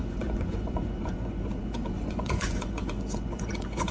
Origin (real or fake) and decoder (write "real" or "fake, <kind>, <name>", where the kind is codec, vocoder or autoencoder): fake, vocoder, Vocos